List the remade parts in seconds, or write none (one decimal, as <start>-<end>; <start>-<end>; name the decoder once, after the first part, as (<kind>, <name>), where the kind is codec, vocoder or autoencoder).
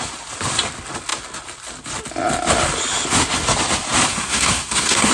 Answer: 4.1-5.1 (codec, SNAC)